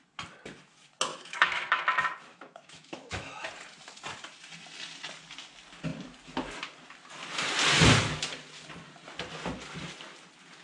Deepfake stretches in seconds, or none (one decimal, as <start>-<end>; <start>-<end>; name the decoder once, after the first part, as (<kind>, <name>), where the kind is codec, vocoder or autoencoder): 1.1-1.8 (autoencoder, DAC-VAE); 2.3-3.5